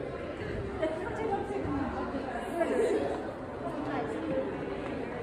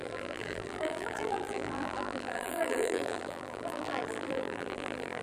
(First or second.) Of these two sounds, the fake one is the second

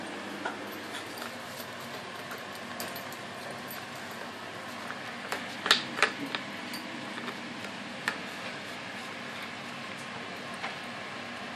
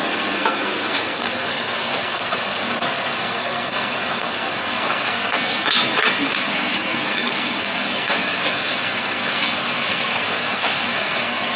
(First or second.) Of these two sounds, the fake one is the second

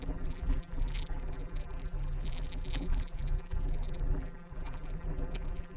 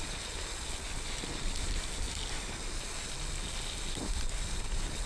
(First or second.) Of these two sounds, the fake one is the first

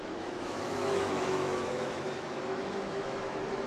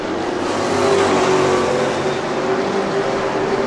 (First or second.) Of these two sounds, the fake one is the first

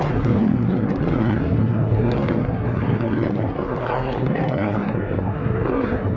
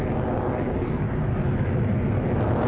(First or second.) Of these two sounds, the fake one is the first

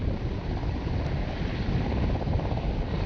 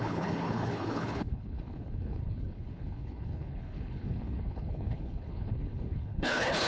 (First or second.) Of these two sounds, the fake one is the second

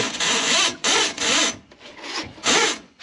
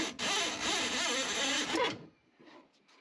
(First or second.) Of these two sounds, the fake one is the first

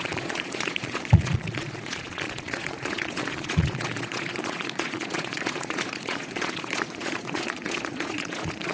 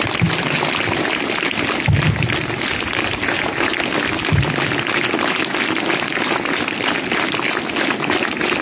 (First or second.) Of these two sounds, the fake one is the first